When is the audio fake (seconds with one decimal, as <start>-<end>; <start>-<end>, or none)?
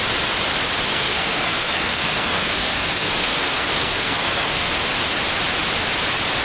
0.9-4.7